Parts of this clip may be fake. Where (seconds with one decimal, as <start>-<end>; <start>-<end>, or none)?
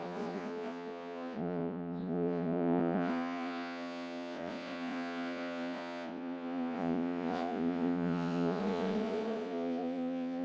0.0-10.4